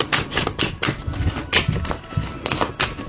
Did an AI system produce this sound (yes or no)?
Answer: no